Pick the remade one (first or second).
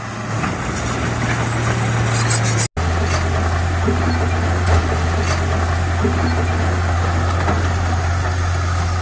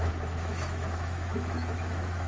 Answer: second